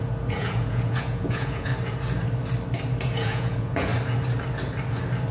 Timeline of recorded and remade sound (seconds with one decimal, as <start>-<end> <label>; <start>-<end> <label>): 0.0-1.7 remade; 1.7-3.0 recorded; 3.0-3.9 remade; 3.9-5.3 recorded

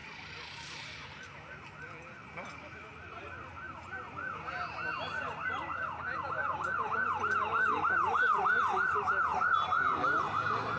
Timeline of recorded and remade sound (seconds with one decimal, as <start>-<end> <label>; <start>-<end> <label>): 0.0-10.8 recorded

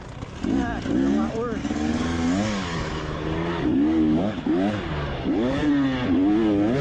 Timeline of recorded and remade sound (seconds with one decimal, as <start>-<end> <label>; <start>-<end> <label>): 0.0-1.6 recorded; 1.6-5.7 remade; 5.7-6.8 recorded

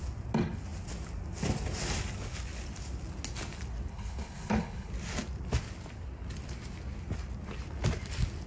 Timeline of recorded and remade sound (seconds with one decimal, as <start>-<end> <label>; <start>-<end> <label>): 0.0-3.9 recorded; 3.9-4.9 remade; 4.9-8.5 recorded

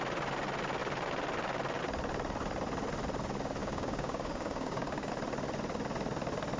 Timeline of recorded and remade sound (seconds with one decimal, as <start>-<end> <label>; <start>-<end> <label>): 0.0-3.6 recorded; 3.6-5.1 remade; 5.1-6.6 recorded

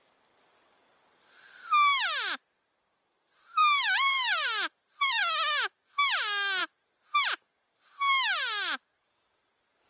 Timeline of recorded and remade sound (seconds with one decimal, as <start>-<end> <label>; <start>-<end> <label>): 0.0-3.6 recorded; 3.6-5.2 remade; 5.2-9.9 recorded

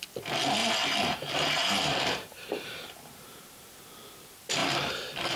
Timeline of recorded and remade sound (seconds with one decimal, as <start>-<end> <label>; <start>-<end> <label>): 0.0-0.6 recorded; 0.6-3.8 remade; 3.8-4.6 recorded; 4.6-5.4 remade

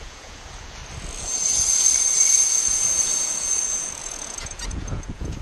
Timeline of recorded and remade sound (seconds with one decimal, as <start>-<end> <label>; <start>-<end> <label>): 0.0-0.8 remade; 0.8-2.4 recorded; 2.4-5.4 remade